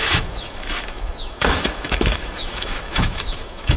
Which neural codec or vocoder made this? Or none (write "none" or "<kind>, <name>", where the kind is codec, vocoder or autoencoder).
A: autoencoder, DAC-VAE